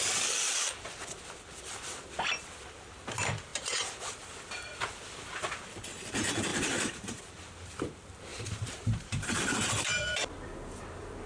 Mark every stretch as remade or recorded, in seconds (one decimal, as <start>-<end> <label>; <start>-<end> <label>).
0.0-6.5 recorded; 6.5-7.2 remade; 7.2-8.3 recorded; 8.3-9.4 remade; 9.4-11.3 recorded